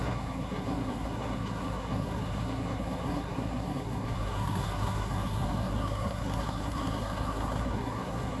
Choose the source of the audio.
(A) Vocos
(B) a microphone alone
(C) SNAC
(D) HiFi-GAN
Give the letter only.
C